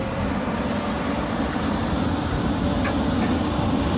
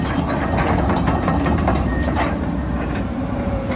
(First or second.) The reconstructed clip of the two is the second